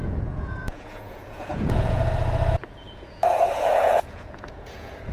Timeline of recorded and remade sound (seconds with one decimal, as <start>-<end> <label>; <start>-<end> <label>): 0.0-2.0 remade; 2.0-2.5 recorded; 2.5-5.1 remade